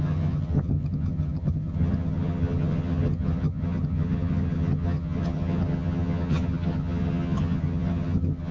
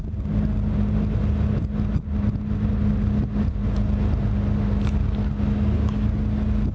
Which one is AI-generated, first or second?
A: first